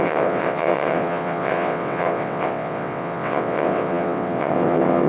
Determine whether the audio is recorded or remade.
remade